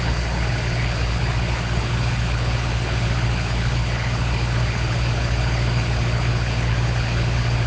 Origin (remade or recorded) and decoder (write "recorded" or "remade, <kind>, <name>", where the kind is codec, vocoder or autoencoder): remade, codec, HILCodec